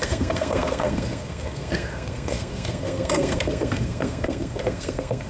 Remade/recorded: remade